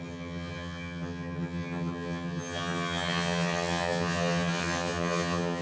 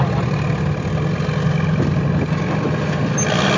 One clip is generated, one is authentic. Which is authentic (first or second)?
second